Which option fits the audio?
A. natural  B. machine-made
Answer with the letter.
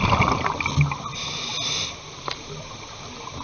A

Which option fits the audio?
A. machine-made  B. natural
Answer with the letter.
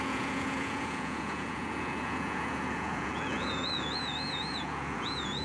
A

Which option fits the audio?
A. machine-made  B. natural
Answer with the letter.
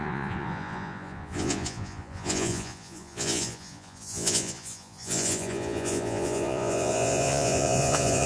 A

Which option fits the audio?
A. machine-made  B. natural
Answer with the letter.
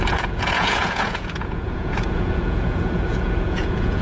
A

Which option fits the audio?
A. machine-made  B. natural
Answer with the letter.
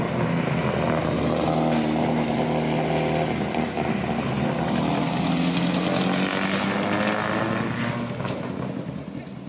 B